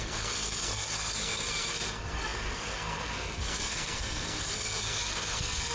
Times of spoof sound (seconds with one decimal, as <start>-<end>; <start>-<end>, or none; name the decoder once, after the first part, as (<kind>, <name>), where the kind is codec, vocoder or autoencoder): 0.0-5.7 (codec, SNAC)